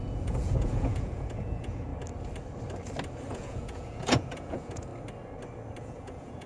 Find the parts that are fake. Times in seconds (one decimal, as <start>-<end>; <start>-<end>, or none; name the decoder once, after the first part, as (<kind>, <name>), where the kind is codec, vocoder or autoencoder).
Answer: 0.0-1.9 (vocoder, Vocos); 3.3-4.9; 5.8-6.5